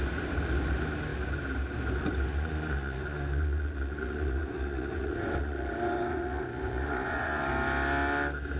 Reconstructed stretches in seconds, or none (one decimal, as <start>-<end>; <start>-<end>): 2.3-7.5